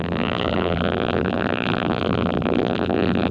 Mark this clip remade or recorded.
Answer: remade